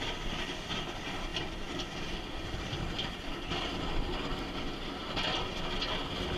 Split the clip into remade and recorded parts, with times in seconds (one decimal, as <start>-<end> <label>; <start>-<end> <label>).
0.0-6.4 recorded